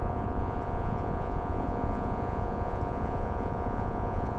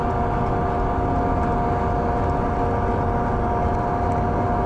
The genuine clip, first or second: second